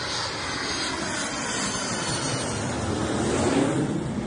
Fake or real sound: real